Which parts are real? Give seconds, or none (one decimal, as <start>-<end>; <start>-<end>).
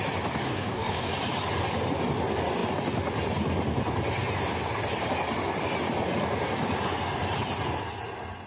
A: 0.0-0.5; 1.1-8.5